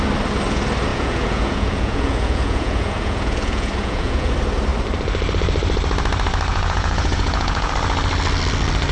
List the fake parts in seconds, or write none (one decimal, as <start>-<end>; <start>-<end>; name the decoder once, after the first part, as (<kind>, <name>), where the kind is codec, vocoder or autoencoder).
0.9-4.3 (vocoder, Vocos); 6.5-7.7